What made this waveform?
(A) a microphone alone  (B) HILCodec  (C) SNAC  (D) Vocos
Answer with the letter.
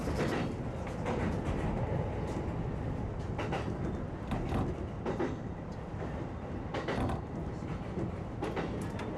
A